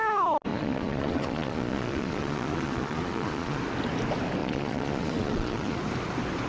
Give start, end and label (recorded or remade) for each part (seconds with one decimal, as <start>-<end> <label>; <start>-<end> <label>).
0.0-0.5 recorded; 0.5-3.6 remade; 3.6-4.4 recorded; 4.4-5.8 remade; 5.8-6.5 recorded

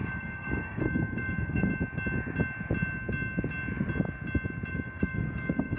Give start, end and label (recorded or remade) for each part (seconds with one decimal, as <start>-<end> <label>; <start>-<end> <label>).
0.0-1.7 remade; 1.7-4.7 recorded; 4.7-5.8 remade